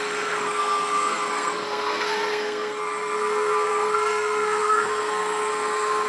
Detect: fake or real fake